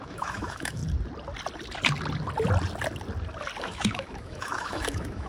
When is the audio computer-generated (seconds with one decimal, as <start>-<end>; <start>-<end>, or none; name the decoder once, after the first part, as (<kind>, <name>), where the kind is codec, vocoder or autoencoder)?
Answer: 0.0-0.8 (autoencoder, DAC-VAE); 3.6-5.3